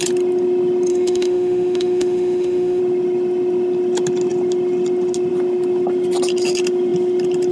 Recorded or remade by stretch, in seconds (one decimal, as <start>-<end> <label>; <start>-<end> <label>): 0.0-0.9 recorded; 0.9-2.8 remade; 2.8-7.5 recorded